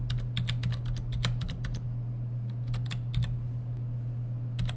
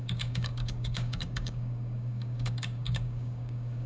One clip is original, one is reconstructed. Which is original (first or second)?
first